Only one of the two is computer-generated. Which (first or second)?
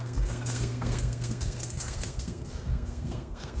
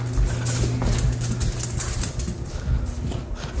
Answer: first